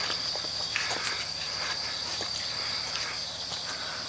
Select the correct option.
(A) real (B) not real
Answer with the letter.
A